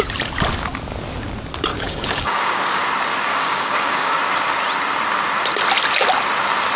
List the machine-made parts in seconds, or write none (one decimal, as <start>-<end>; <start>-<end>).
1.7-2.8; 3.3-4.2